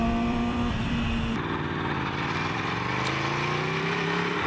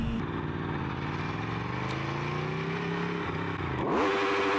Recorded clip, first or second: second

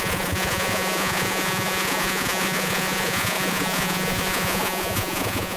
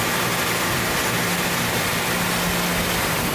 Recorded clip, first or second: second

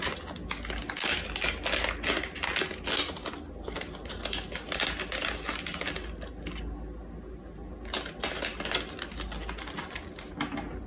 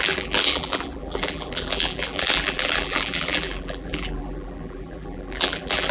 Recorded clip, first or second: first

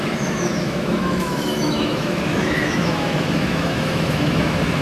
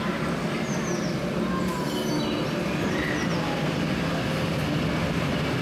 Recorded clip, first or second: second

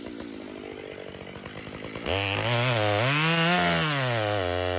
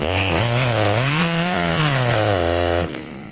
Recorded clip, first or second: first